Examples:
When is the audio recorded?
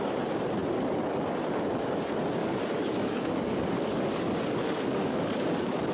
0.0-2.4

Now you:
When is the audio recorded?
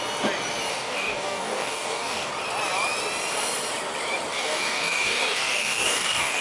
0.0-0.7; 2.3-4.3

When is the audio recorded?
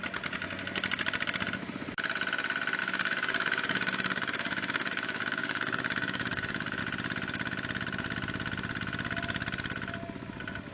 0.0-2.8; 6.8-10.7